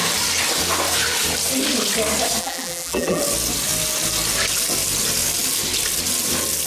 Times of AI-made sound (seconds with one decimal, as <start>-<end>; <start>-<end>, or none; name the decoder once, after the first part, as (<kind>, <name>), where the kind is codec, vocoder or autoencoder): 2.4-3.2 (vocoder, BigVGAN v2)